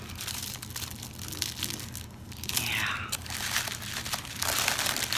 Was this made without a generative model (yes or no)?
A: yes